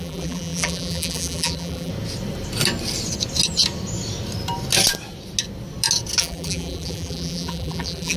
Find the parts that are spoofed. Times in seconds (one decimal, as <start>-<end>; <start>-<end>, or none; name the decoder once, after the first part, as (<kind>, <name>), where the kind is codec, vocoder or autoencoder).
0.0-1.9 (vocoder, BigVGAN v2); 6.2-8.2